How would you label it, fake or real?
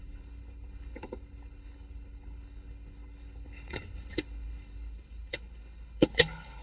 fake